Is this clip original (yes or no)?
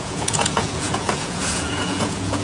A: no